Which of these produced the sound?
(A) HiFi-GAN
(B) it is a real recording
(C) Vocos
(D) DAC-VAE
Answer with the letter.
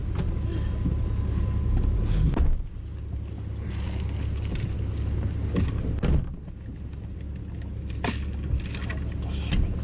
B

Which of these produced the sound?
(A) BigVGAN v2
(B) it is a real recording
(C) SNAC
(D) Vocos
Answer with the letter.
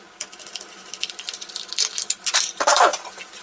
A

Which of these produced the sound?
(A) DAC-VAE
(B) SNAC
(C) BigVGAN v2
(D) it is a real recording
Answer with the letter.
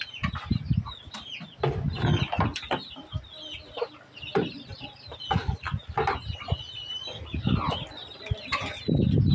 D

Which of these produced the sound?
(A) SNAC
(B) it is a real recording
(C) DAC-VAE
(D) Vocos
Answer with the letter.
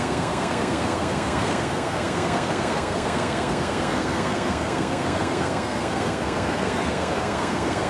A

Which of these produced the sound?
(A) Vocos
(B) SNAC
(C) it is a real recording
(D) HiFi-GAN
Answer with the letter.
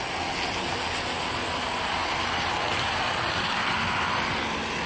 C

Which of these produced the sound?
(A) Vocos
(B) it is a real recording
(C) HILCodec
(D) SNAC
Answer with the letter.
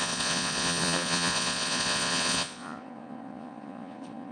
A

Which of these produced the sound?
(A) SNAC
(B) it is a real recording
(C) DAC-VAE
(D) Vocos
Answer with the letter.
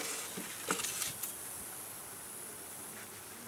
B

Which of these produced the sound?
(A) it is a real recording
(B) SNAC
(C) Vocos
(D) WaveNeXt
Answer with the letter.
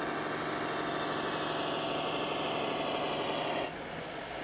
A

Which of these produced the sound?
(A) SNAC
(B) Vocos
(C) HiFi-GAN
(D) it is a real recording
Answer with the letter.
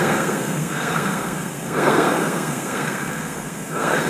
A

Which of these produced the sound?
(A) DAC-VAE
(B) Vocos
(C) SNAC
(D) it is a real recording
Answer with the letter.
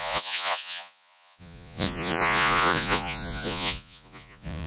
B